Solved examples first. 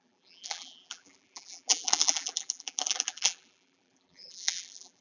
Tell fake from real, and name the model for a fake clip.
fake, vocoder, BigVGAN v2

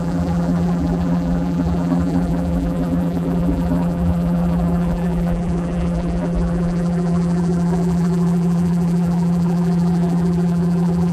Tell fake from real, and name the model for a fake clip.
fake, vocoder, BigVGAN v2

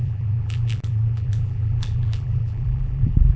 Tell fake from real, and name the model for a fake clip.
fake, vocoder, BigVGAN v2